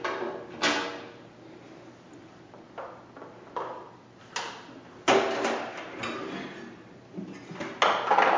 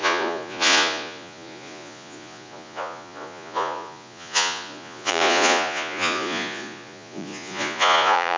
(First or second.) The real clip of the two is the first